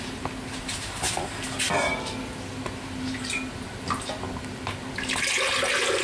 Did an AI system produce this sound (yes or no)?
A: yes